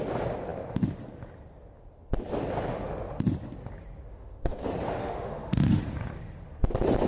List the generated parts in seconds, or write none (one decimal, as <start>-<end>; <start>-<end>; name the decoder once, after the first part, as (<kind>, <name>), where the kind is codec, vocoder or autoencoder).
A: 4.1-4.6 (autoencoder, DAC-VAE); 5.0-5.8